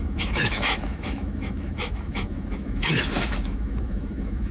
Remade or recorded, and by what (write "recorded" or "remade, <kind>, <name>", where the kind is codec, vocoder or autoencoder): remade, autoencoder, DAC-VAE